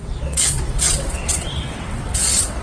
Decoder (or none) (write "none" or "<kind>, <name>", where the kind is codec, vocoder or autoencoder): vocoder, WaveNeXt